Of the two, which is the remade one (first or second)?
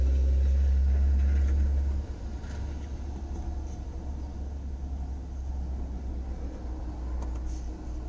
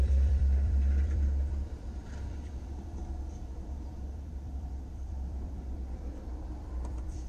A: second